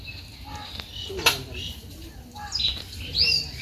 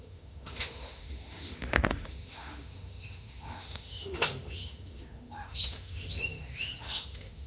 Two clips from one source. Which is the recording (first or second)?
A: first